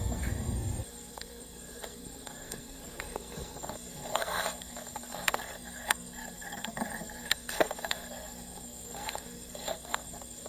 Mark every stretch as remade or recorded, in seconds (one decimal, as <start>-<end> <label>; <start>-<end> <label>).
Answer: 0.0-10.5 remade